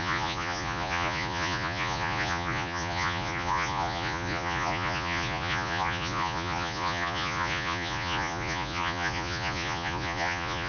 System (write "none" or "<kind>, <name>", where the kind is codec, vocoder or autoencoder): vocoder, Vocos